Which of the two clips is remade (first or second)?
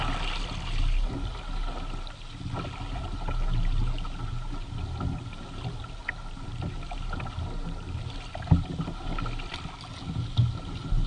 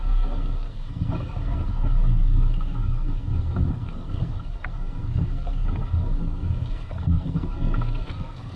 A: second